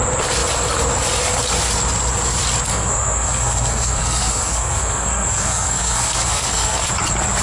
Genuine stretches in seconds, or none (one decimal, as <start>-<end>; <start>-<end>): 0.0-2.7; 6.9-7.4